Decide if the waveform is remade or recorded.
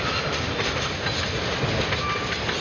recorded